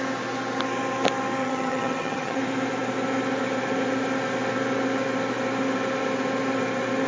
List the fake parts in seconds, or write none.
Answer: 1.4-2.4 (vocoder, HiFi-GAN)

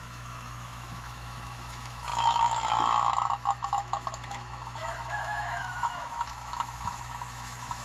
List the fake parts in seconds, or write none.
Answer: 0.0-7.8 (autoencoder, DAC-VAE)

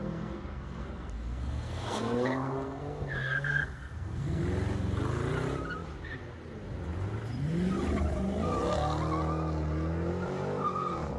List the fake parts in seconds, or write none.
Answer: 0.0-4.4 (codec, SNAC)